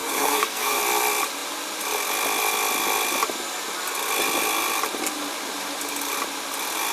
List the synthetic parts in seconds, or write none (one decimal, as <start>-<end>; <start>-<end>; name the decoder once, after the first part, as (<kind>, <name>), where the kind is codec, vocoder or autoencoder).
0.0-0.8 (codec, SNAC)